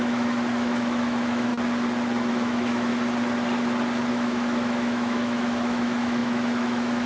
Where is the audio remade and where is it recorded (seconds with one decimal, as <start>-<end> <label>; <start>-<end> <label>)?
0.0-1.5 remade; 1.5-2.3 recorded; 2.3-2.9 remade; 2.9-4.1 recorded; 4.1-7.1 remade